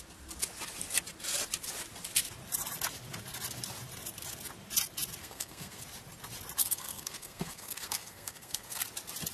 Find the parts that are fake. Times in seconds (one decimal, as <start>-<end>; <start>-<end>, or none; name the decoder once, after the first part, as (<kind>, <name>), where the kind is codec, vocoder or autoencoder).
5.2-5.8 (codec, SNAC); 6.6-8.8